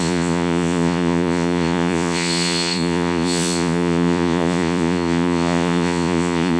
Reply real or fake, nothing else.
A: fake